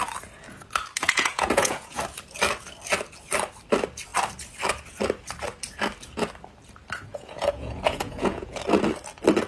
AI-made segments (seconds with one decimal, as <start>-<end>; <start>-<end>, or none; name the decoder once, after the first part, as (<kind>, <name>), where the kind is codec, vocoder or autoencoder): 1.0-2.0 (vocoder, Vocos); 7.1-8.6